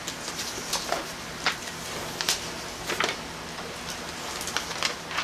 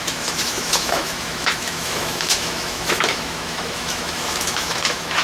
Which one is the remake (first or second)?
second